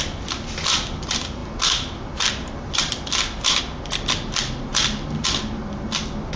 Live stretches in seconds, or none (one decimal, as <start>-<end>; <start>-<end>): 0.0-6.4